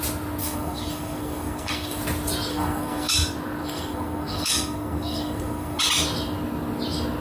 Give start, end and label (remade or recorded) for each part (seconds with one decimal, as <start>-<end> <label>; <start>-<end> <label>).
0.0-0.4 recorded; 0.4-2.0 remade; 2.0-2.5 recorded; 2.5-3.1 remade; 3.1-3.6 recorded; 3.6-5.8 remade; 5.8-7.2 recorded